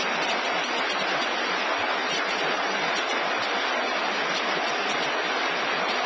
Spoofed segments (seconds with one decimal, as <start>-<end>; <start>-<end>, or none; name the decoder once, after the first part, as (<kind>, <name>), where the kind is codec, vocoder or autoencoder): 2.0-3.2 (vocoder, BigVGAN v2)